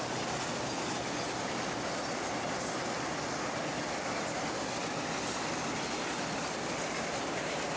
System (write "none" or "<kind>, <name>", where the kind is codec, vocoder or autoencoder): none